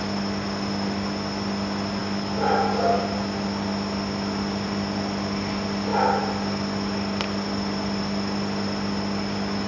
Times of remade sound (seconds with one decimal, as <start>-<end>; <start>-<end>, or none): none